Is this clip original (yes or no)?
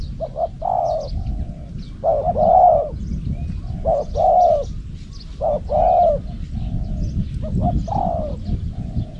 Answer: yes